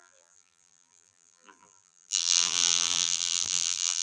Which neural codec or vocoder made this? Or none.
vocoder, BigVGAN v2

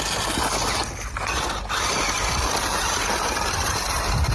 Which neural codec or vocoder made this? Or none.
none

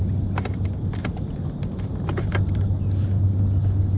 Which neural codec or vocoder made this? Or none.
none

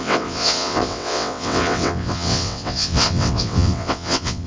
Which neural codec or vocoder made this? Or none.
vocoder, WaveNeXt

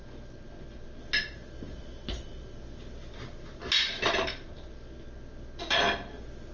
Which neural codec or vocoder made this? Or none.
none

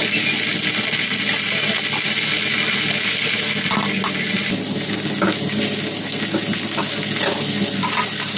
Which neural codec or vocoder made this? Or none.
none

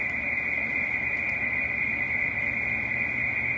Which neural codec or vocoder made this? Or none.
none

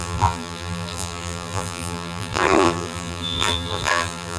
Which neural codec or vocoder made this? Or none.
vocoder, BigVGAN v2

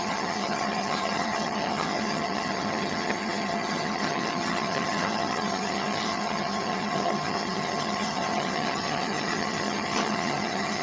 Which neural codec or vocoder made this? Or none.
vocoder, HiFi-GAN